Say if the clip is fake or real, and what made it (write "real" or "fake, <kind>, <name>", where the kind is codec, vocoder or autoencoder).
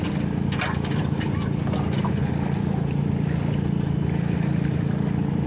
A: real